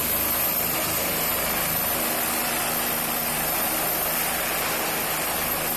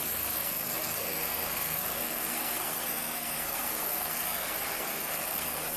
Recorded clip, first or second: first